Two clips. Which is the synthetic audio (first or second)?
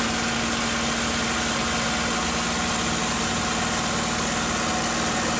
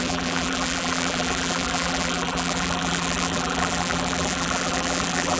second